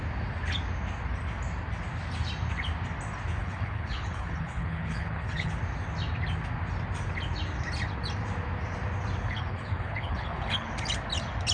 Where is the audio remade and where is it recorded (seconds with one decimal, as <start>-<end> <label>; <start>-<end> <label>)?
0.0-3.4 recorded; 3.4-5.5 remade; 5.5-9.2 recorded; 9.2-10.7 remade; 10.7-11.5 recorded